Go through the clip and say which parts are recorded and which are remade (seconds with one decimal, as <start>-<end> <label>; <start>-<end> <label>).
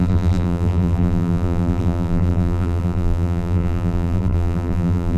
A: 0.0-5.2 remade